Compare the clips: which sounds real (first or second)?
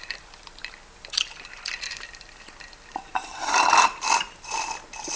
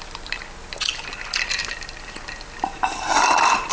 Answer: second